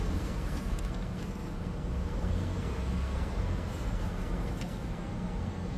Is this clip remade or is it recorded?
remade